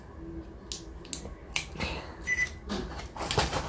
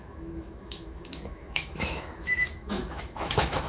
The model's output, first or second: second